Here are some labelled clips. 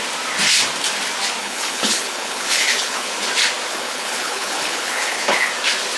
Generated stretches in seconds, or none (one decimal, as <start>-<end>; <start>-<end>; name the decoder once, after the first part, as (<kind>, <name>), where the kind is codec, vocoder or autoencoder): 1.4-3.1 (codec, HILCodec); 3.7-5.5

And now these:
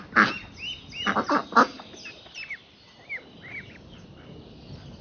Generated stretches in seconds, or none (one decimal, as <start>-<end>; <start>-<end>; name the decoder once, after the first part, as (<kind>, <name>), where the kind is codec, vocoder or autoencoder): none

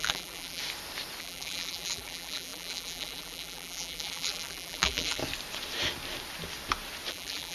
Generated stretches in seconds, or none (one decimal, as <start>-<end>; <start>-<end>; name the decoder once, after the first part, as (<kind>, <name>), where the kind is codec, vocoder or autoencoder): 0.0-0.6 (vocoder, BigVGAN v2); 1.2-5.2; 7.1-7.5

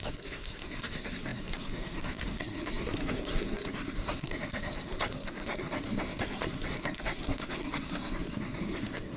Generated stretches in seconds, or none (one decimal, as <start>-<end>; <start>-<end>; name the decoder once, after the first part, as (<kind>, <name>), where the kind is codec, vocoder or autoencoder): 0.0-9.2 (codec, SNAC)